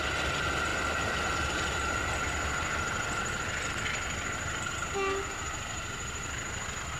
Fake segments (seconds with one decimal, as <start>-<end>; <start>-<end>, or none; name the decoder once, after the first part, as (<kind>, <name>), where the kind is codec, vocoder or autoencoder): none